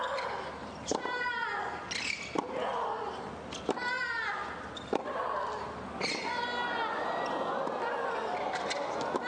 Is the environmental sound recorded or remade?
recorded